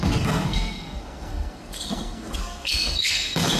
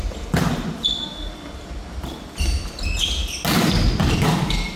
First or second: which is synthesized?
first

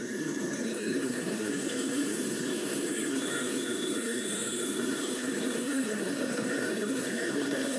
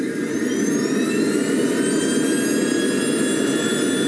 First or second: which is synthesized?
first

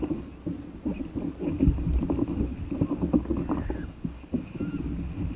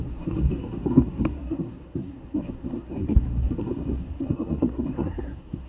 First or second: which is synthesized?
second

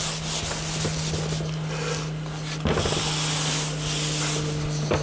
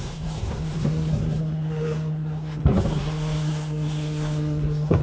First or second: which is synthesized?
second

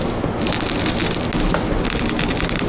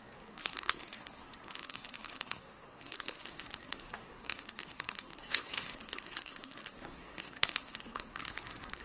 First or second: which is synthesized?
second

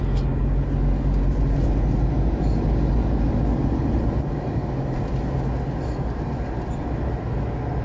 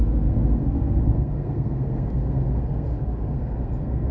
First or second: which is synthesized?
second